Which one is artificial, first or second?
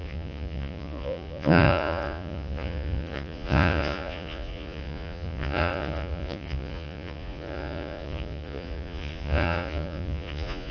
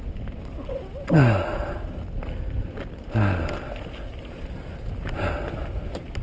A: first